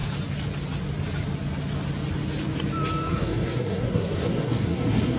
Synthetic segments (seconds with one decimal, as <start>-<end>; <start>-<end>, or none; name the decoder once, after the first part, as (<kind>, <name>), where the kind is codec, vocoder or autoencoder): 3.1-5.2 (codec, SNAC)